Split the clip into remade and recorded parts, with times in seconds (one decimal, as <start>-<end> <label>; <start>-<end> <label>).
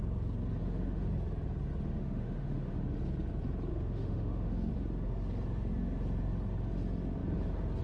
0.0-0.6 recorded; 0.6-1.1 remade; 1.1-2.0 recorded; 2.0-2.8 remade; 2.8-3.7 recorded; 3.7-4.7 remade; 4.7-7.8 recorded